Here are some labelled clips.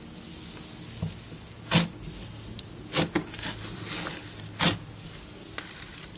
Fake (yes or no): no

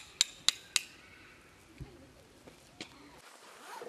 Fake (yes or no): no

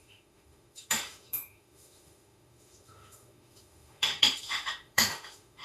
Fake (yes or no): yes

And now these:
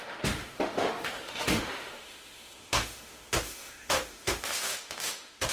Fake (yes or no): yes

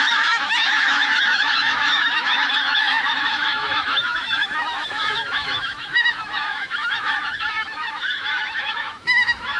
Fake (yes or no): yes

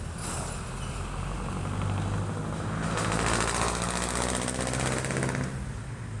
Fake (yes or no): no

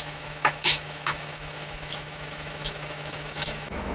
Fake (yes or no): yes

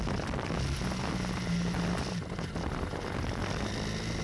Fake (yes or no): no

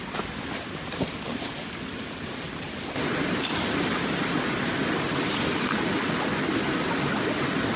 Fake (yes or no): no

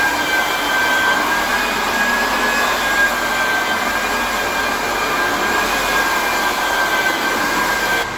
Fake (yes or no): no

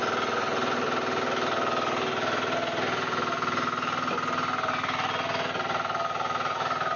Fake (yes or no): no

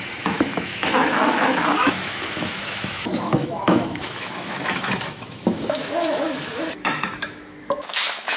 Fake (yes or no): yes